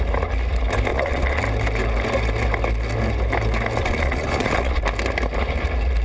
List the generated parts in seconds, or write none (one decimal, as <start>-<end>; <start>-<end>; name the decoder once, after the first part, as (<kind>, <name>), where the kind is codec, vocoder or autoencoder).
0.9-1.4 (vocoder, Vocos); 3.8-4.8